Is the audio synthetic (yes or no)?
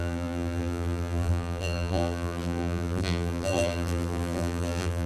yes